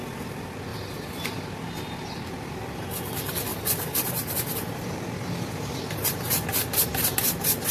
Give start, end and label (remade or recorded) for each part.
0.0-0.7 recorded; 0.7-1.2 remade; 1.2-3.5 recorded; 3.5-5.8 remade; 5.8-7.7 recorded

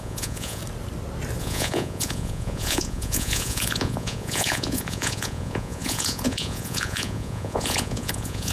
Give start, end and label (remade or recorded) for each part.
0.0-0.6 remade; 0.6-1.4 recorded; 1.4-8.5 remade

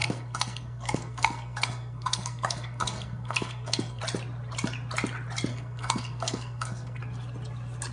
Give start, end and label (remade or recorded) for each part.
0.0-4.0 remade; 4.0-5.5 recorded; 5.5-7.0 remade; 7.0-7.9 recorded

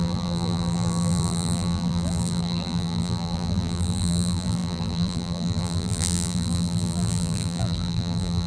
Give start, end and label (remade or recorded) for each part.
0.0-8.5 remade

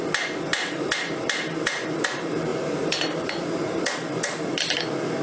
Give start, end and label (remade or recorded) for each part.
0.0-2.5 recorded; 2.5-4.8 remade; 4.8-5.2 recorded